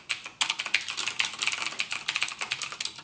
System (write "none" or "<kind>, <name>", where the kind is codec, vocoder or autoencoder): none